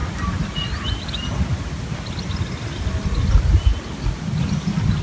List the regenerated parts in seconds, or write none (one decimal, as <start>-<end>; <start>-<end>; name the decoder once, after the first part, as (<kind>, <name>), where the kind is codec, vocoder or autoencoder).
none